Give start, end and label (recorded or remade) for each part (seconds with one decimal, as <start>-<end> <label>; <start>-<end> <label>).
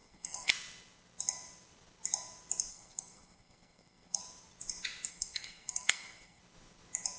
0.0-0.5 remade; 0.5-2.7 recorded; 2.7-4.2 remade; 4.2-5.1 recorded; 5.1-6.4 remade; 6.4-7.2 recorded